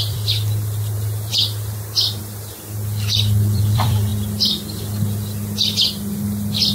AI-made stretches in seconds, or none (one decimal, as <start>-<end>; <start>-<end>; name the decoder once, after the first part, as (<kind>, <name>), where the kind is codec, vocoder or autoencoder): 0.0-1.3 (vocoder, BigVGAN v2); 2.2-4.1